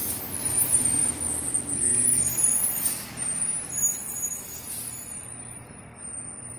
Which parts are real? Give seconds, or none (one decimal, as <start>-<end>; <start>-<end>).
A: 1.1-6.6

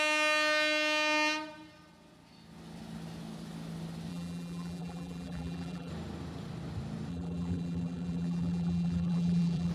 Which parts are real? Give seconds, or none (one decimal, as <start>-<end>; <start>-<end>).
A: 0.0-4.1; 5.9-7.1

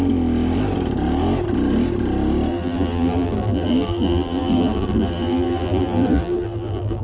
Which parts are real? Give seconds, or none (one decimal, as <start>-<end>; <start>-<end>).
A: 0.0-2.5

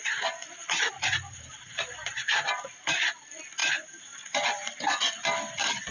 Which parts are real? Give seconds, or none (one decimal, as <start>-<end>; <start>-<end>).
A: 0.0-0.6; 2.5-3.6; 4.7-5.9

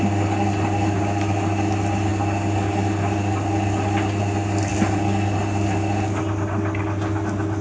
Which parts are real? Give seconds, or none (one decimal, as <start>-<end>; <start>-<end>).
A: 0.0-7.6

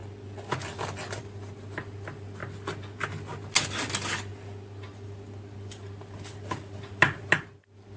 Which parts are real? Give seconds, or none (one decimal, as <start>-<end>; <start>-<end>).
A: 0.0-1.2; 2.4-7.2

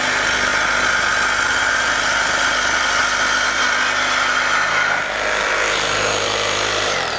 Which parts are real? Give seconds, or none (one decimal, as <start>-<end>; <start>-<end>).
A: 0.5-1.8; 3.0-4.7